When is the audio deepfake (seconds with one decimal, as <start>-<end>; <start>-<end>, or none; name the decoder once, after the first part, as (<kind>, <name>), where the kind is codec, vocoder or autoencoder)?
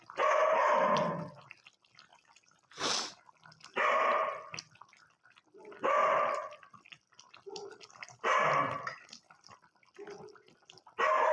none